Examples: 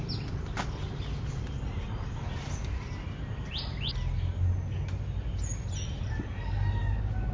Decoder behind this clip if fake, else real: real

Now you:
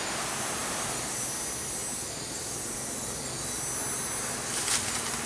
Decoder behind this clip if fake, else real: real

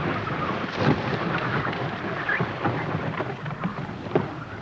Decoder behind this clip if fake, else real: real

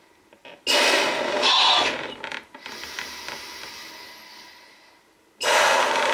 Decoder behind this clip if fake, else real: real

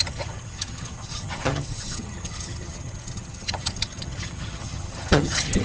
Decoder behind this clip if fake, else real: fake, vocoder, HiFi-GAN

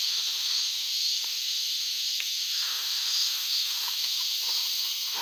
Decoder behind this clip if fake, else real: fake, autoencoder, DAC-VAE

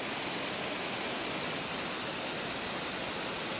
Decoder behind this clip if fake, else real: real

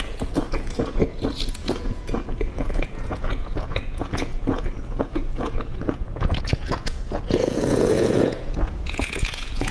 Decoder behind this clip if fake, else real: fake, vocoder, Vocos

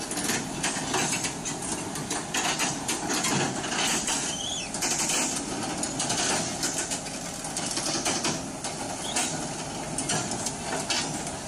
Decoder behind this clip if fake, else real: real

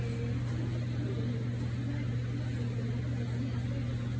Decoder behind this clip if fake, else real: real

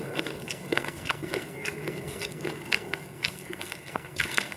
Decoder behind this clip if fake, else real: fake, codec, SNAC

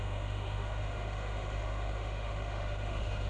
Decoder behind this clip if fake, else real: fake, autoencoder, DAC-VAE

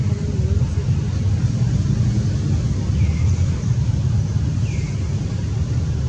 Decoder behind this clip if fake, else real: real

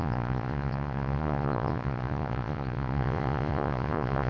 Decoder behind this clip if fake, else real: fake, vocoder, Vocos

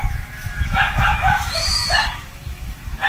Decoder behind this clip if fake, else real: fake, autoencoder, DAC-VAE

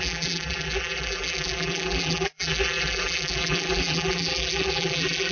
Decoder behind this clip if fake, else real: fake, vocoder, BigVGAN v2